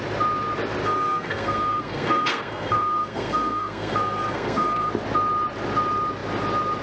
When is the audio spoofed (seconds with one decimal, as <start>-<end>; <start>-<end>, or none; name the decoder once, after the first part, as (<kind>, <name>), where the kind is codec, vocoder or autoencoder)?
0.8-4.9 (codec, SNAC)